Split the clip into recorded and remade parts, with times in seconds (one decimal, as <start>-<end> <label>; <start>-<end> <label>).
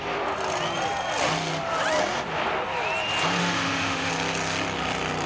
0.0-3.4 recorded; 3.4-4.1 remade; 4.1-5.3 recorded